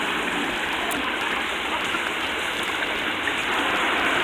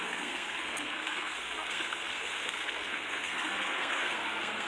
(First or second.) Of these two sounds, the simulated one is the second